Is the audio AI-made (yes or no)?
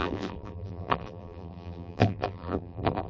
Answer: yes